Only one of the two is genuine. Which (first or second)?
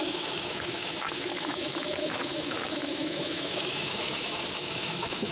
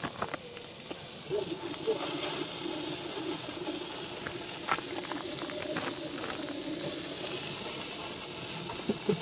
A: second